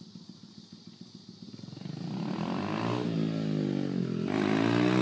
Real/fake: real